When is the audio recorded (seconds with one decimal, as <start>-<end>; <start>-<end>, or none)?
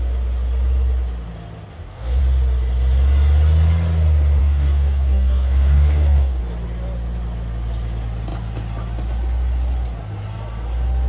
0.0-1.7; 2.2-4.4; 6.4-11.1